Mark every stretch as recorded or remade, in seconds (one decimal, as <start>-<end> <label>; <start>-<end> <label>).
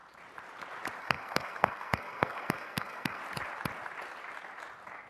0.0-1.0 recorded; 1.0-3.2 remade; 3.2-5.1 recorded